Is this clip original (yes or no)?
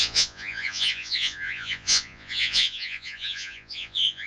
no